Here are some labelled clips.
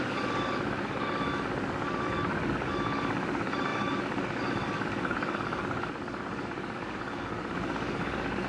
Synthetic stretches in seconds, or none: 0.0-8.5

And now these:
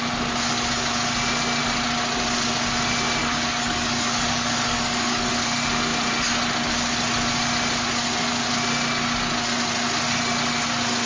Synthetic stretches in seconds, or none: 3.2-5.3

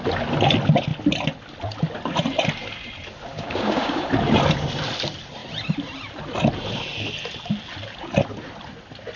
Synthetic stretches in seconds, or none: 3.3-4.1

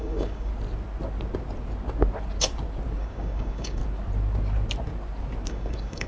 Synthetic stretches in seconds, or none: 0.0-0.5; 3.0-3.8; 5.5-6.1

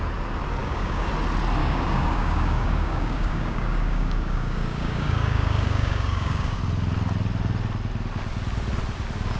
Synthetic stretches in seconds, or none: 0.6-1.1; 1.6-6.6

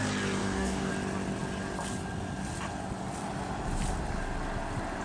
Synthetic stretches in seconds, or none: 0.4-0.9